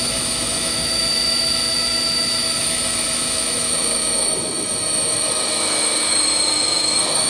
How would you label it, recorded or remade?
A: remade